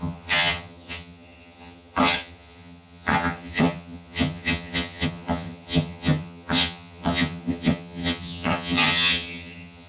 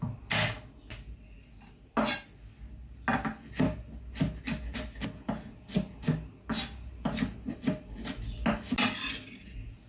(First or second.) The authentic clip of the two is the second